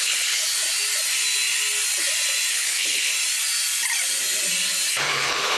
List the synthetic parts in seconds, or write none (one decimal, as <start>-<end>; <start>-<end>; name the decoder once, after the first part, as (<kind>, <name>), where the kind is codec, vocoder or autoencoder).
0.0-0.4 (codec, HILCodec); 2.5-3.1; 4.9-5.6